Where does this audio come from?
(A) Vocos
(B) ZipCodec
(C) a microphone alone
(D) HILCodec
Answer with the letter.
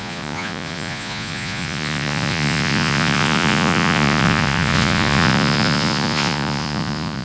A